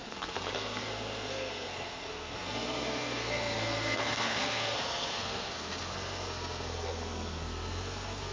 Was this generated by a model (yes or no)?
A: yes